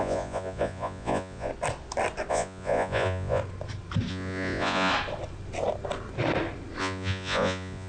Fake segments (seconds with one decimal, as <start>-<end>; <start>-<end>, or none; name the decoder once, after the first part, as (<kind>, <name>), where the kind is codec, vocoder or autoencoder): 0.0-1.5 (vocoder, Vocos); 2.3-3.4; 4.1-4.9; 6.8-7.9